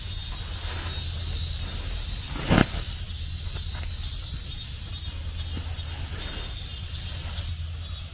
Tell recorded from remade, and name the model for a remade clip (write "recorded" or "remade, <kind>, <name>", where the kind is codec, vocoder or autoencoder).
recorded